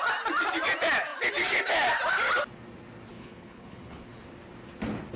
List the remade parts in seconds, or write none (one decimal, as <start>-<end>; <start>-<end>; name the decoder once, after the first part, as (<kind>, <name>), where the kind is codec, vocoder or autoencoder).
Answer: 3.1-4.2 (codec, HILCodec)